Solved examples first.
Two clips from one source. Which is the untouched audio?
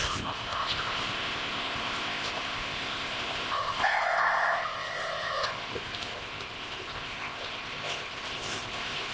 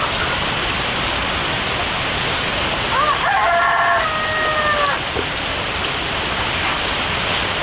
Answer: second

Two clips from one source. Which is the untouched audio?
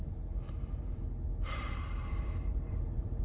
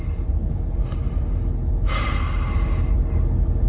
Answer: second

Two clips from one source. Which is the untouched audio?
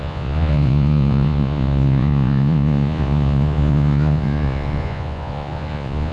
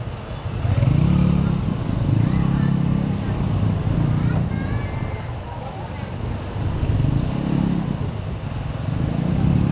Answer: second